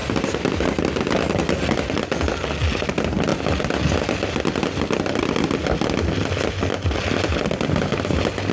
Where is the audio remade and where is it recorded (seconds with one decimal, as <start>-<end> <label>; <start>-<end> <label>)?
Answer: 0.0-1.0 remade; 1.0-8.5 recorded